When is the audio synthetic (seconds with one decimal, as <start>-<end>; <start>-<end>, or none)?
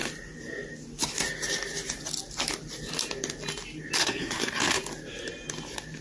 4.0-4.6